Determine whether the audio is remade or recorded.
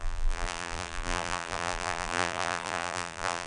remade